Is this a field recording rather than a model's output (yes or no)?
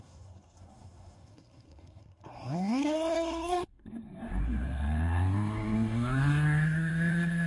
no